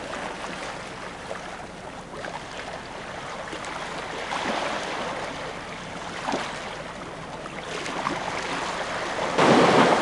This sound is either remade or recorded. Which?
recorded